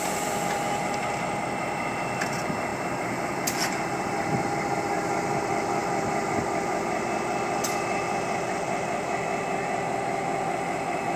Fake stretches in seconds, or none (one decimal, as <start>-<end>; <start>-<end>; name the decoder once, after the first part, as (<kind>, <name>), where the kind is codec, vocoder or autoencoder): 0.0-11.2 (vocoder, BigVGAN v2)